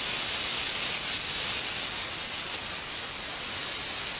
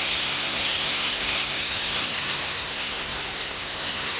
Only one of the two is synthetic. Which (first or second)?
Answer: second